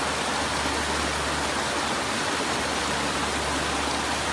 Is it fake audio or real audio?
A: real